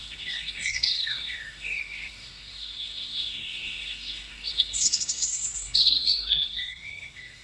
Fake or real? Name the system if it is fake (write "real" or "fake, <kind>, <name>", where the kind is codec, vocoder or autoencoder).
fake, codec, SNAC